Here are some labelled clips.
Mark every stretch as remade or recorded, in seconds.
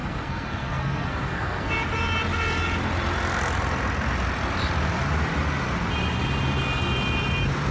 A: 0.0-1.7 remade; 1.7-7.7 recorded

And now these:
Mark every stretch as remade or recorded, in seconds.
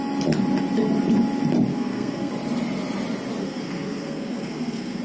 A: 0.0-1.7 recorded; 1.7-2.3 remade; 2.3-3.4 recorded; 3.4-5.0 remade